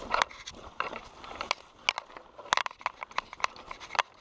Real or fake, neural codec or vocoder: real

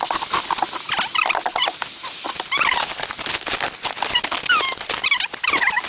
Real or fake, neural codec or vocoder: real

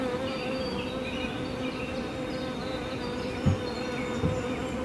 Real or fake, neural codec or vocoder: real